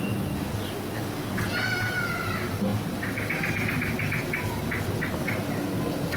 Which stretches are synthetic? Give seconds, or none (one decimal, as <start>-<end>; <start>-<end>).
none